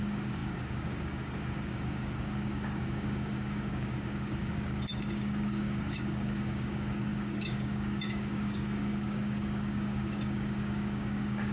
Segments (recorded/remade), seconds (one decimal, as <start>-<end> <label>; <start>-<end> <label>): 0.0-11.5 remade